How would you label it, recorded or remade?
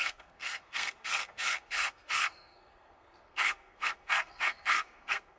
remade